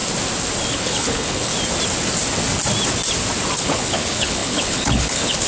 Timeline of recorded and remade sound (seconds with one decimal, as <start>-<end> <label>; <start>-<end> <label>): 0.0-0.7 recorded; 0.7-1.5 remade; 1.5-3.6 recorded; 3.6-5.5 remade